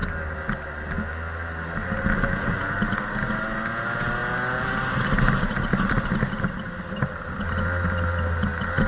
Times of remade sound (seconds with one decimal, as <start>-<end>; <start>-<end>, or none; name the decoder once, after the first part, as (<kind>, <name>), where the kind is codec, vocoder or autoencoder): none